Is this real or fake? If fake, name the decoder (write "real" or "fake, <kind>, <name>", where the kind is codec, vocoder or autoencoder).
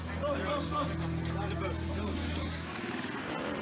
real